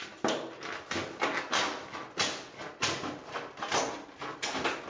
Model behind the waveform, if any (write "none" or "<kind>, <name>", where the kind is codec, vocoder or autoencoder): none